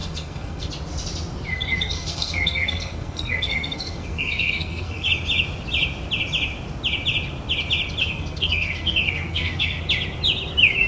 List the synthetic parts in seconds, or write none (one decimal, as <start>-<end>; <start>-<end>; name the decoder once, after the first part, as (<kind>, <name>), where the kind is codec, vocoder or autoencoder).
0.0-0.7 (codec, SNAC); 1.5-5.1; 8.0-9.8